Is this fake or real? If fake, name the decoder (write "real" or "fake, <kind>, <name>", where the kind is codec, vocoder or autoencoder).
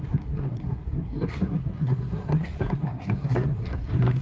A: fake, codec, SNAC